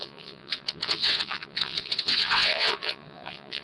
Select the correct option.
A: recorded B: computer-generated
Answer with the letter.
B